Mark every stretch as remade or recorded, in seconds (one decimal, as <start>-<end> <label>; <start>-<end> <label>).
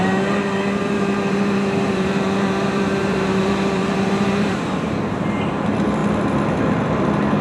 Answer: 0.0-0.8 recorded; 0.8-5.2 remade; 5.2-7.4 recorded